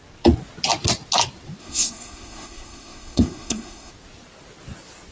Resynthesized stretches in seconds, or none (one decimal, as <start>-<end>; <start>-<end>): 1.6-3.9